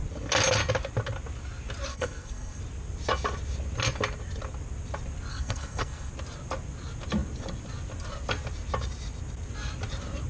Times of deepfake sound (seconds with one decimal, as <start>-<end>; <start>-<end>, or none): 1.9-2.6; 5.3-6.1